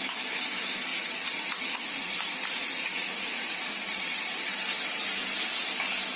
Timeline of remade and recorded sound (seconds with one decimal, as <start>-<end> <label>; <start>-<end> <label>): 0.0-0.9 recorded; 0.9-4.2 remade; 4.2-6.2 recorded